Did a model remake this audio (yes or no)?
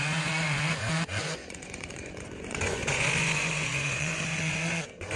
yes